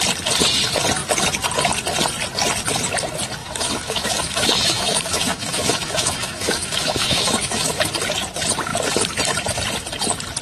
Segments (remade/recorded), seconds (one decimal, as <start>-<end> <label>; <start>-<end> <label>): 0.0-3.4 recorded; 3.4-7.8 remade; 7.8-10.4 recorded